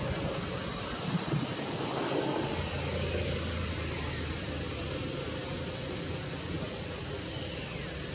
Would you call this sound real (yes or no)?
yes